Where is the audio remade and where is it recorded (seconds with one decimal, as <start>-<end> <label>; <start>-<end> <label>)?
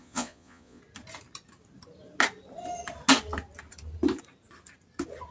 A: 0.0-0.8 remade; 0.8-5.3 recorded